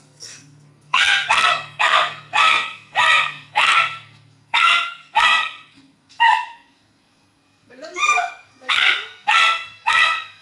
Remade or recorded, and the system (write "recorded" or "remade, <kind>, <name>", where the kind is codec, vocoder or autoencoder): remade, codec, SNAC